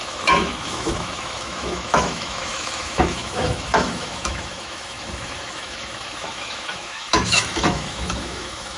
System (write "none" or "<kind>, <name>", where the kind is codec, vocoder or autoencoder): autoencoder, DAC-VAE